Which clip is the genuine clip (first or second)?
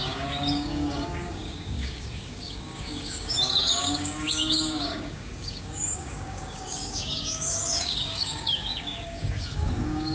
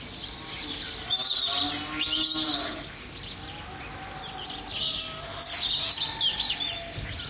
second